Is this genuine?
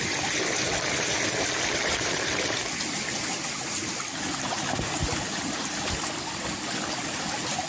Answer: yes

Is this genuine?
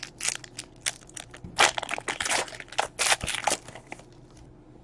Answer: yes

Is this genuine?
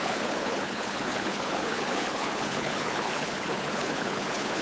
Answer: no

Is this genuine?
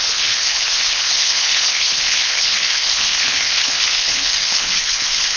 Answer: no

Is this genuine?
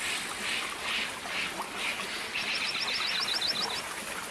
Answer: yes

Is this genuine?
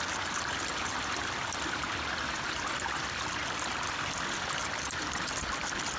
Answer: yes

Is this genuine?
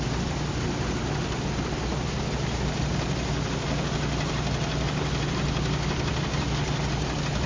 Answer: yes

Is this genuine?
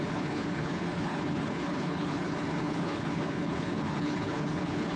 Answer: no